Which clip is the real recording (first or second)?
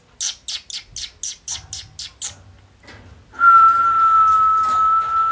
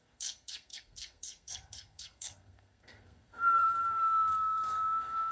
first